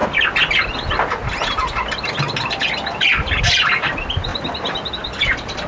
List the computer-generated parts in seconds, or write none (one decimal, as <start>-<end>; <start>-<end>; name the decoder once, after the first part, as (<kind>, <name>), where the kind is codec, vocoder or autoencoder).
none